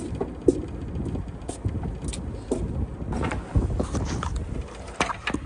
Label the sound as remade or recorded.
recorded